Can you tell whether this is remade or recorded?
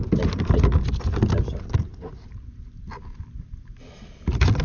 recorded